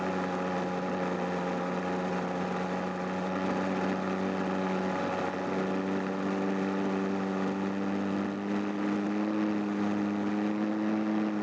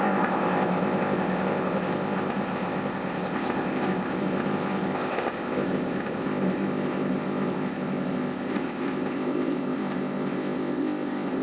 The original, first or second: first